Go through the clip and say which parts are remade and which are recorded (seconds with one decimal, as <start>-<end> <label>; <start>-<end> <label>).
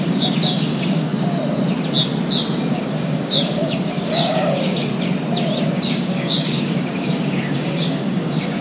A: 0.0-1.1 remade; 1.1-2.7 recorded; 2.7-4.9 remade; 4.9-5.7 recorded; 5.7-8.6 remade